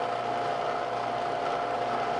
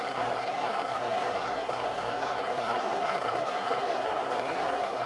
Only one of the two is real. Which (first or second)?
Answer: first